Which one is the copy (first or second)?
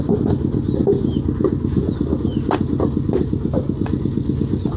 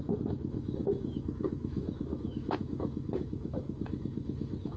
second